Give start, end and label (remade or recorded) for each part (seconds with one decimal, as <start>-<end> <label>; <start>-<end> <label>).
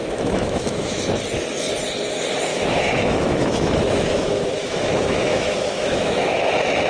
0.0-1.0 remade; 1.0-2.5 recorded; 2.5-6.5 remade; 6.5-6.9 recorded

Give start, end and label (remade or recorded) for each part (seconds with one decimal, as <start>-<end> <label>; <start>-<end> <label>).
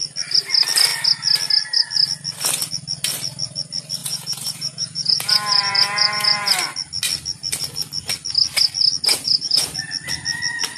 0.0-4.0 recorded; 4.0-6.5 remade; 6.5-9.1 recorded; 9.1-9.7 remade; 9.7-10.8 recorded